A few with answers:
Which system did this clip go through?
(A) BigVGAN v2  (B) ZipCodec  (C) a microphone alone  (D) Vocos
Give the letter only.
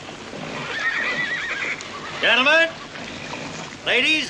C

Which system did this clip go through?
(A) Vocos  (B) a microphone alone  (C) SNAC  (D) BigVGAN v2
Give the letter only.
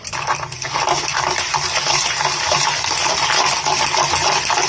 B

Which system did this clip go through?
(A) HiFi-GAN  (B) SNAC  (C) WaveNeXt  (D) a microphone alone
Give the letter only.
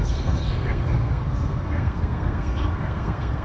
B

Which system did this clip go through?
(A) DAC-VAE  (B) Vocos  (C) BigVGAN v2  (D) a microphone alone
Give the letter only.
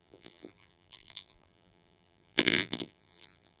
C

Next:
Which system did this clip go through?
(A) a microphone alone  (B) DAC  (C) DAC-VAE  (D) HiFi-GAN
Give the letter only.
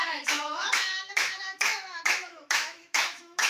C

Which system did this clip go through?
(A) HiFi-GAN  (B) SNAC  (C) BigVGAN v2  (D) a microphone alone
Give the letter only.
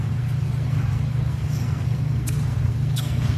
B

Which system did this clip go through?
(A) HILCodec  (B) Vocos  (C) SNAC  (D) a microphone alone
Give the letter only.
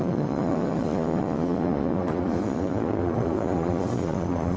B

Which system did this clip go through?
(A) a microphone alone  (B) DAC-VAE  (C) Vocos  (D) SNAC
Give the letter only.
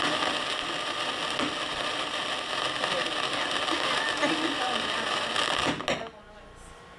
A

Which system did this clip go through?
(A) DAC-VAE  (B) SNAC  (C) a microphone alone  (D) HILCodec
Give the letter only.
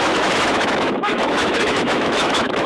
A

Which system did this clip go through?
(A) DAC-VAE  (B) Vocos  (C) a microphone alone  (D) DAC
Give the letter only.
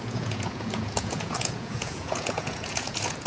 B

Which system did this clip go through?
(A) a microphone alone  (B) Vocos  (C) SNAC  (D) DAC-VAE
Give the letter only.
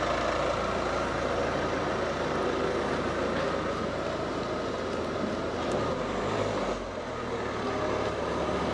A